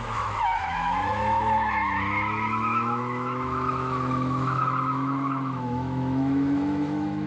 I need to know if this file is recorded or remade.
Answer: remade